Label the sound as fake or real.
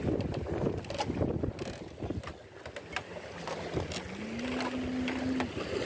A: real